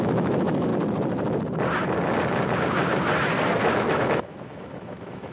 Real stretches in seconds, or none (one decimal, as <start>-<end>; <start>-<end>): 0.7-3.9